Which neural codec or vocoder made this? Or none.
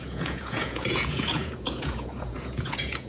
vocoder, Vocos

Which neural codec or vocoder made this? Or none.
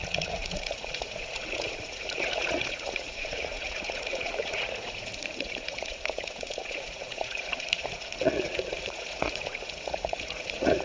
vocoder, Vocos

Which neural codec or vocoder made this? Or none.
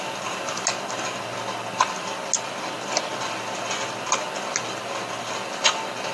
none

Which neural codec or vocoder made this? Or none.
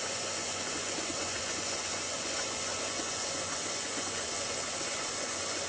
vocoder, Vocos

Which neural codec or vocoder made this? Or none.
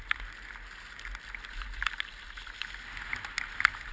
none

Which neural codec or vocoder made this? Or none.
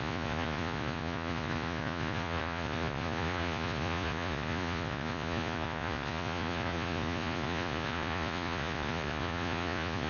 vocoder, Vocos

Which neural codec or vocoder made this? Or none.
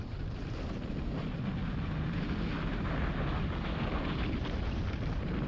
none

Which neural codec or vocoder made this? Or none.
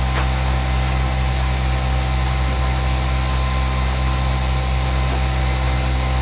none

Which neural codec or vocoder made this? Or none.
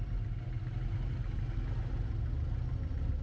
none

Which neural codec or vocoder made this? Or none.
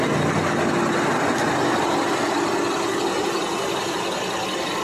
none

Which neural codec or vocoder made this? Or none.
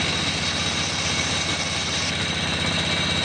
none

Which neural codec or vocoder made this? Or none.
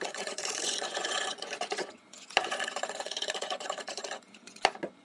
vocoder, Vocos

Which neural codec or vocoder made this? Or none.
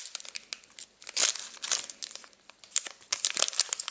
none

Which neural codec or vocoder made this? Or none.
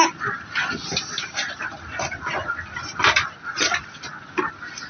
none